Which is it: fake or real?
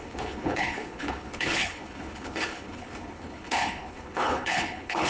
fake